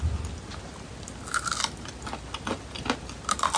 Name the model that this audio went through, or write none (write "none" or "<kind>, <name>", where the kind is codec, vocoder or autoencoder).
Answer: none